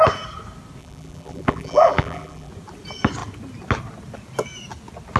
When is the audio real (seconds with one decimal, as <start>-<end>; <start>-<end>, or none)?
0.0-0.8; 2.5-5.2